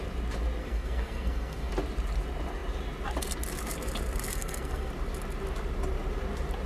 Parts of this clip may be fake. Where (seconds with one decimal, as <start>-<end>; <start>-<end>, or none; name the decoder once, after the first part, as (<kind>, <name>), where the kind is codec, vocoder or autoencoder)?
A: 0.6-1.7 (codec, SNAC); 4.3-4.9